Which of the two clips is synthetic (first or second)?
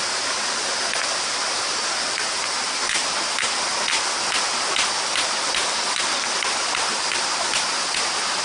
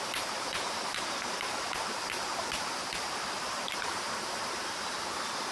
second